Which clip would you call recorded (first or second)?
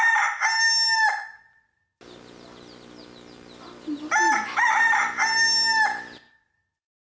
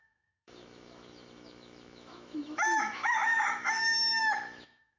first